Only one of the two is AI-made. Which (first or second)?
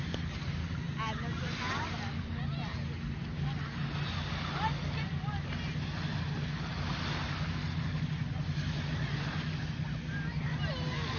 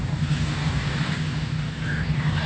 second